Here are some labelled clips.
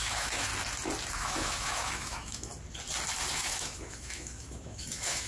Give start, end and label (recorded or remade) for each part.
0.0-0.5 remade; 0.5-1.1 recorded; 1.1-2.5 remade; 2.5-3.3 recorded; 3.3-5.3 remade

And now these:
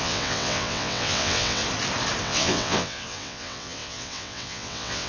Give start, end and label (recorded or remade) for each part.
0.0-1.6 remade; 1.6-2.2 recorded; 2.2-5.1 remade

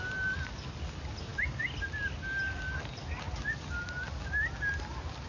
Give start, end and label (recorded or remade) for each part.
0.0-5.3 recorded